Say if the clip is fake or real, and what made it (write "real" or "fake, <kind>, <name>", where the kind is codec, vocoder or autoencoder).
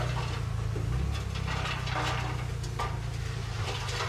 real